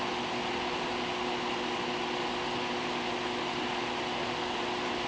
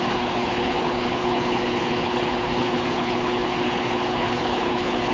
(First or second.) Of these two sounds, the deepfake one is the second